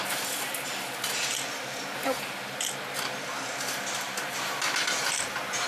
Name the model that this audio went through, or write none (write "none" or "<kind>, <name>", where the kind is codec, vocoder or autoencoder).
none